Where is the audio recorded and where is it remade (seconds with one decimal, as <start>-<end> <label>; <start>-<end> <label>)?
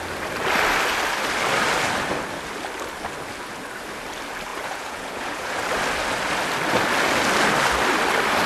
0.0-4.5 recorded; 4.5-5.6 remade; 5.6-8.5 recorded